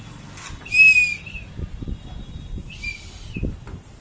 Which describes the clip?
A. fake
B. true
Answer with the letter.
B